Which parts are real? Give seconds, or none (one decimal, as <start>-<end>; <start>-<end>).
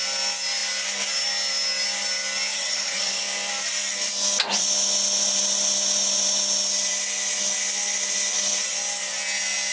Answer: 0.0-2.5; 3.2-9.7